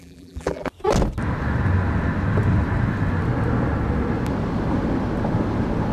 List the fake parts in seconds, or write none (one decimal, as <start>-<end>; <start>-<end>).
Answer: 0.0-0.7